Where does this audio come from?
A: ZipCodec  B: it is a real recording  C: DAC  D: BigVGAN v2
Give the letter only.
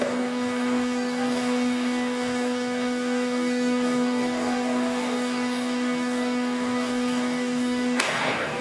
C